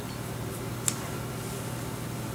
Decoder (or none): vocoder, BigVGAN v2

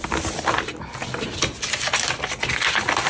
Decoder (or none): none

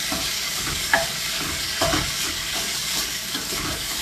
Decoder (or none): codec, DAC